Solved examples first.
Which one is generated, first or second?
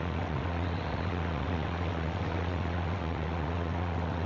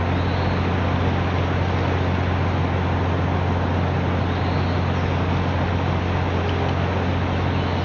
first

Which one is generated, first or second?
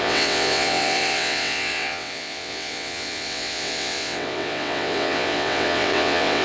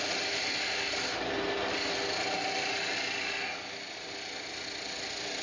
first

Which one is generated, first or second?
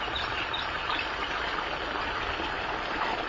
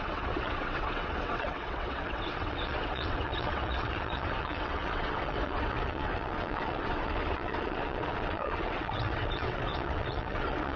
second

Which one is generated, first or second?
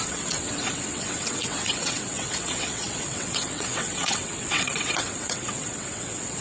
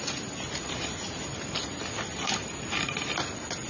first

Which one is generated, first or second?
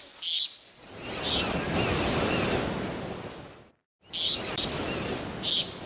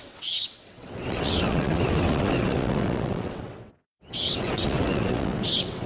second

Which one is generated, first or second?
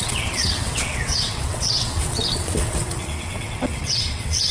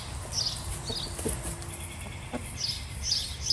first